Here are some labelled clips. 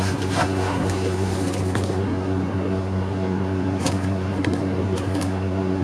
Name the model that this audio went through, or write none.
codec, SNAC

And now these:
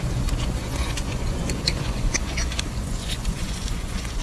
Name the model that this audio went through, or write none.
vocoder, Vocos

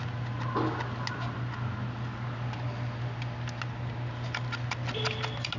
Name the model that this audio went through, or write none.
none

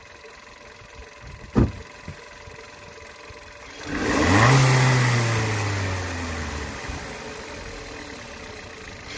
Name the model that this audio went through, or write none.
none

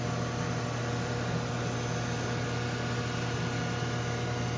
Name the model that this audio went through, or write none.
none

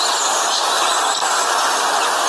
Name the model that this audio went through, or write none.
vocoder, BigVGAN v2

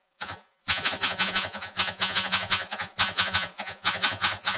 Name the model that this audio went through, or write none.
vocoder, Vocos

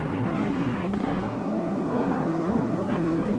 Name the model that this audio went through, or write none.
codec, SNAC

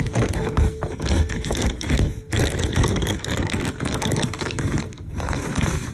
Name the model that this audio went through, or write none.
codec, SNAC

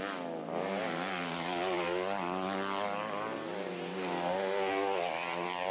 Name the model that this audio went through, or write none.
none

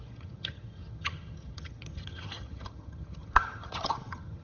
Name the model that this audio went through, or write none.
vocoder, HiFi-GAN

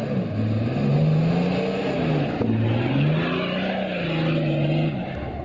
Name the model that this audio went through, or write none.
none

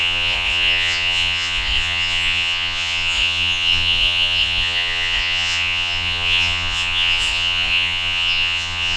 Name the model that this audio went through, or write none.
vocoder, Vocos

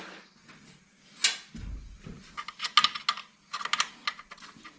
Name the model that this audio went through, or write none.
none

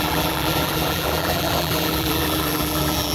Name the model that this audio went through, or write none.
vocoder, BigVGAN v2